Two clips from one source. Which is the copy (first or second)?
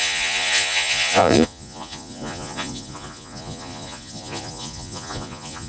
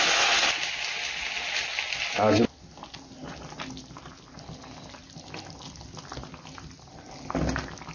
first